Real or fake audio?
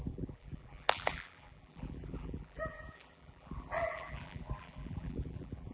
fake